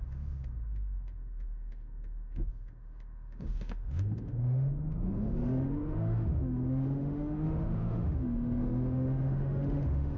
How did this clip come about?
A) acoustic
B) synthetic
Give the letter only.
B